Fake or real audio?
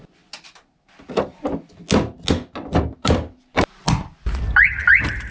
real